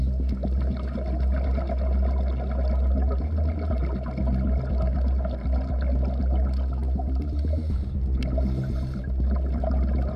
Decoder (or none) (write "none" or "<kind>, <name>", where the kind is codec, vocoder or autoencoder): none